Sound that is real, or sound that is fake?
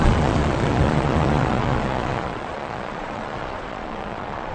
fake